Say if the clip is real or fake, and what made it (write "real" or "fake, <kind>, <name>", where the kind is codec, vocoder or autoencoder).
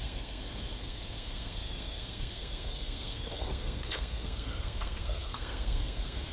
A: fake, codec, SNAC